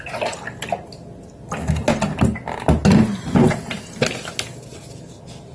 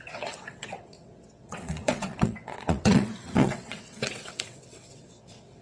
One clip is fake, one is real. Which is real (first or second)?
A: first